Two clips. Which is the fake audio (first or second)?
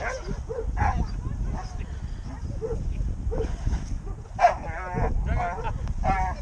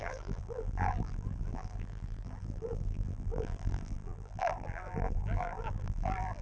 second